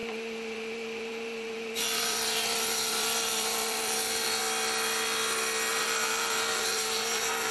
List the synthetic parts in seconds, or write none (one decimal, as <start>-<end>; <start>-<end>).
0.0-4.4; 5.7-7.5

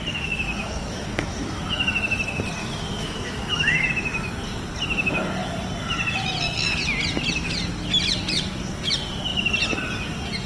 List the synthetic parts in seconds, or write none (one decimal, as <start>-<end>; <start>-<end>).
0.6-1.6; 2.6-3.9

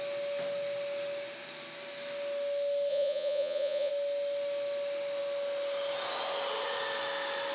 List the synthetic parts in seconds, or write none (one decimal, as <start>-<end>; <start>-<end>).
2.9-3.9

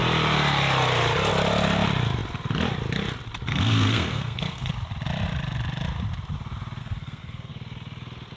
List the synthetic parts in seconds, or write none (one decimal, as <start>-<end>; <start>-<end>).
3.5-4.7; 6.8-7.5

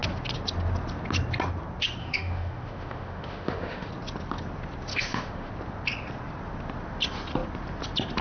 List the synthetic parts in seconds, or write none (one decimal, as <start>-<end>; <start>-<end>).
2.0-3.9; 4.9-5.5

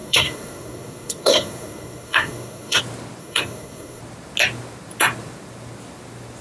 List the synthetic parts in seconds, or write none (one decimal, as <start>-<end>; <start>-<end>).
0.0-2.8; 3.2-4.0

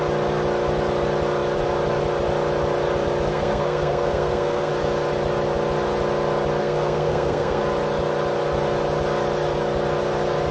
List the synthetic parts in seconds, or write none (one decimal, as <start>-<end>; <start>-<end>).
3.3-4.7; 6.6-7.6

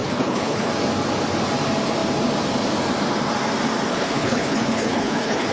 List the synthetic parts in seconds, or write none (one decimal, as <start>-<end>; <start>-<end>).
0.0-0.7; 3.9-5.5